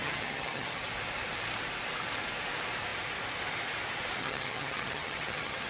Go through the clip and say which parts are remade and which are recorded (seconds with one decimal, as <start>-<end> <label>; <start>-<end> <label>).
0.0-0.8 remade; 0.8-4.2 recorded; 4.2-5.7 remade